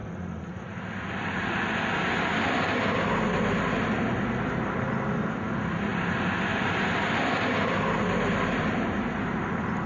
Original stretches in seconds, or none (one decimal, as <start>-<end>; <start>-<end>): 0.0-9.9